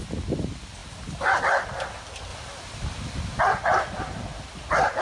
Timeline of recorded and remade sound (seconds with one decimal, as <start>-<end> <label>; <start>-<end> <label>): 0.0-0.8 recorded; 0.8-1.4 remade; 1.4-5.0 recorded